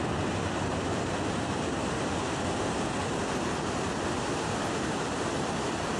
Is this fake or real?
real